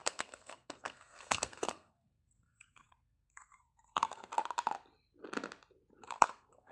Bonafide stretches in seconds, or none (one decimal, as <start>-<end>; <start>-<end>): 4.3-6.0